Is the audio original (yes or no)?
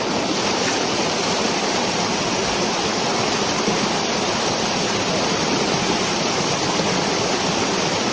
no